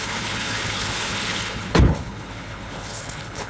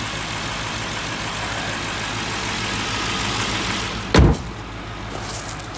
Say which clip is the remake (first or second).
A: first